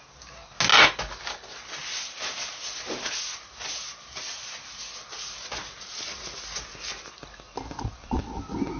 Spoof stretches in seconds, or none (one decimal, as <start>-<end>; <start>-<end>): none

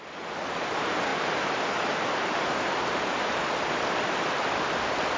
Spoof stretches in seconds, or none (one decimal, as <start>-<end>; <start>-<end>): none

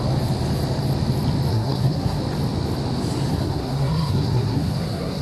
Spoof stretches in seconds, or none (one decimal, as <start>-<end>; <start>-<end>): 1.5-2.2; 3.3-5.2

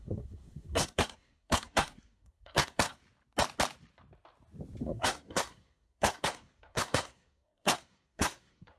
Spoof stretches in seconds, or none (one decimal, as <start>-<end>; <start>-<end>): 0.0-3.0; 4.8-8.8